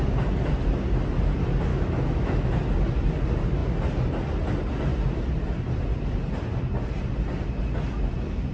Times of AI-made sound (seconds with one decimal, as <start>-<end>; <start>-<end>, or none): 1.7-2.5